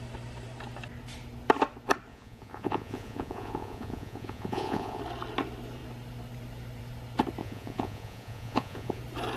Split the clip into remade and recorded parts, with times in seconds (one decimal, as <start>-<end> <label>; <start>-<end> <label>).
0.0-2.1 recorded; 2.1-5.0 remade; 5.0-7.4 recorded; 7.4-9.0 remade; 9.0-9.4 recorded